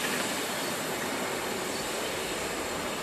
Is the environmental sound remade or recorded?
recorded